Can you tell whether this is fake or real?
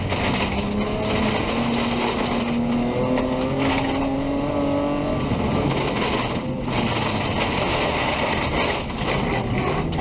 real